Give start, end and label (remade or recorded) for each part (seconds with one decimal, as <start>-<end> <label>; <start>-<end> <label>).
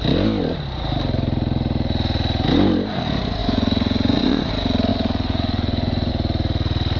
0.0-3.4 recorded; 3.4-4.5 remade; 4.5-4.9 recorded; 4.9-6.1 remade; 6.1-7.0 recorded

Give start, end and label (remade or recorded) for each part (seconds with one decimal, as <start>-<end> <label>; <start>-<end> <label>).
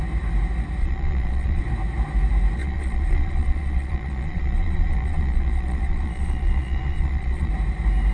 0.0-0.8 recorded; 0.8-1.6 remade; 1.6-2.6 recorded; 2.6-7.5 remade; 7.5-8.1 recorded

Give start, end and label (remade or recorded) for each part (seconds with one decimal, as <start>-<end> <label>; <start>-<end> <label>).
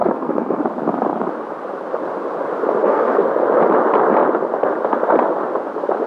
0.0-0.6 remade; 0.6-2.8 recorded; 2.8-3.3 remade; 3.3-6.1 recorded